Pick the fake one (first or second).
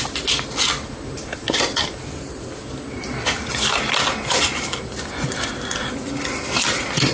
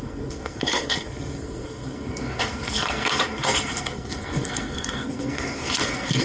second